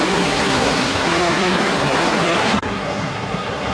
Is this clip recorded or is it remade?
remade